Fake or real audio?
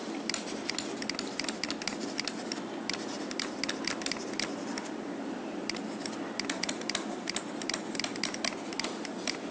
real